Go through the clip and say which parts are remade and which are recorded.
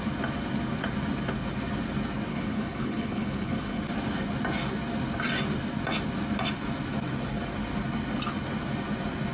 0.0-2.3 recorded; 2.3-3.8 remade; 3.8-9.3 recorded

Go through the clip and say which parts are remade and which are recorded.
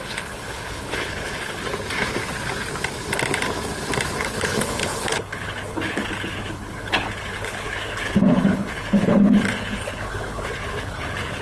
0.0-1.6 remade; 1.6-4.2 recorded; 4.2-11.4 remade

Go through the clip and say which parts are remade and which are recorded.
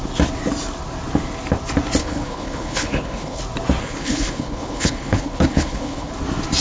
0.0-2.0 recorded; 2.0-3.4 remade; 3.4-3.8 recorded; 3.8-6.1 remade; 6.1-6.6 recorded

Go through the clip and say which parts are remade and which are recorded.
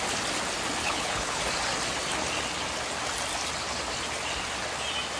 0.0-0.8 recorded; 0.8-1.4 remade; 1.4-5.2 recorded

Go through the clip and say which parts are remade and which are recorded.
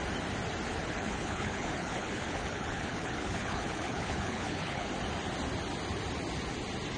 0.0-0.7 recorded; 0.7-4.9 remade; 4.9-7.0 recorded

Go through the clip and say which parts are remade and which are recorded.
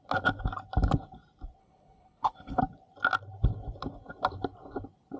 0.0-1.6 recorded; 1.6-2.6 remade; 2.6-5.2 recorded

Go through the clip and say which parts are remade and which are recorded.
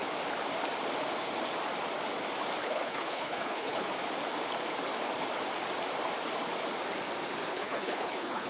0.0-2.6 recorded; 2.6-3.9 remade; 3.9-7.5 recorded; 7.5-8.5 remade